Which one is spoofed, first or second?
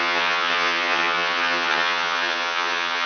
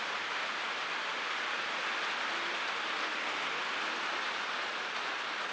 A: first